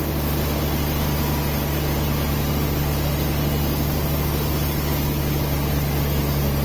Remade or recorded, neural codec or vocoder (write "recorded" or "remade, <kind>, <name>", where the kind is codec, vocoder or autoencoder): recorded